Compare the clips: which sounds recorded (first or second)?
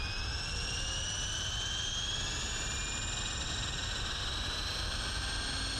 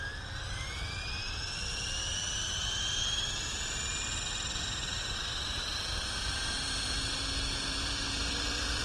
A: first